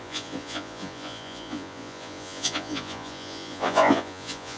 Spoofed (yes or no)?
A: yes